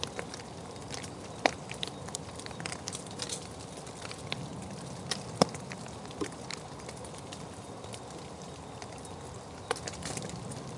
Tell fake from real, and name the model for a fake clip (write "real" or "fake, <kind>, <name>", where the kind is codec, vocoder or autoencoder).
real